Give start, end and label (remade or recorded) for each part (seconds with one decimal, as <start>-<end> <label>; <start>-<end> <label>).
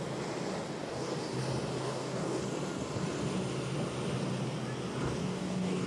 0.0-0.8 recorded; 0.8-1.4 remade; 1.4-1.8 recorded; 1.8-2.4 remade; 2.4-5.2 recorded; 5.2-5.9 remade